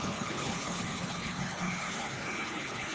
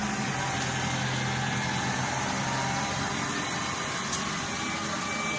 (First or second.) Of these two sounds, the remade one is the first